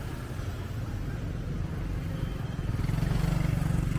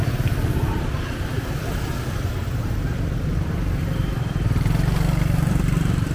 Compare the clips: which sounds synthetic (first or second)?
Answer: second